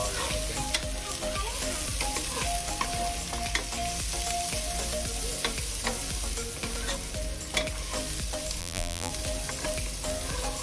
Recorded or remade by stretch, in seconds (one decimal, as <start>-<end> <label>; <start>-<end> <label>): 0.0-8.6 recorded; 8.6-9.1 remade; 9.1-10.6 recorded